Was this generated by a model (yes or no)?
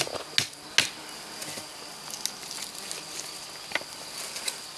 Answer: no